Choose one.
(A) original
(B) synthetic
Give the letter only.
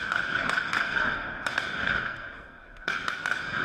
B